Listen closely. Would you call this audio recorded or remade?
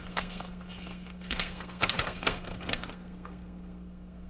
remade